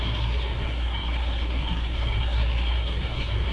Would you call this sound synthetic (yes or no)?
yes